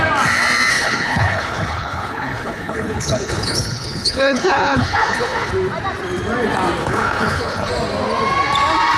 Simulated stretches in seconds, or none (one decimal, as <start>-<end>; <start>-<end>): 0.7-5.5; 6.8-7.7